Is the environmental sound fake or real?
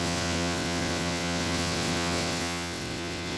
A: fake